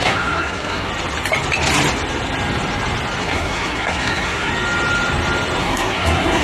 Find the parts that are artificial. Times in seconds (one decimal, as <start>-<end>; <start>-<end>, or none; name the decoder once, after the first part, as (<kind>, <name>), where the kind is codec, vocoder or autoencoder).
0.0-0.9 (codec, SNAC); 3.2-4.5; 5.6-6.4